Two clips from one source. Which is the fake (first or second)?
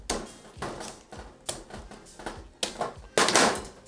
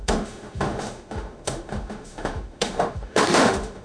second